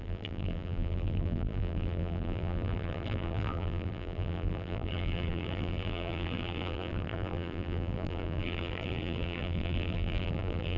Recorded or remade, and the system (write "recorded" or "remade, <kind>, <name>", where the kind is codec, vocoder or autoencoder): remade, vocoder, BigVGAN v2